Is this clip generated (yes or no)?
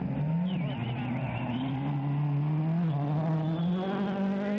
no